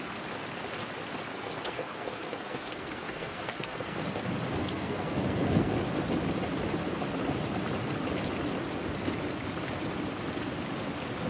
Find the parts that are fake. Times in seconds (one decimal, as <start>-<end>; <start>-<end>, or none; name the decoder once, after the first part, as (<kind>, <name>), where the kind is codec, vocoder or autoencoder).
1.3-4.1 (codec, SNAC); 4.6-5.8